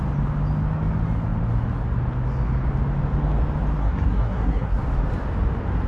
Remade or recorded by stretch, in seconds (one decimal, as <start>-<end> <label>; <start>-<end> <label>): 0.0-3.7 recorded; 3.7-4.8 remade; 4.8-5.9 recorded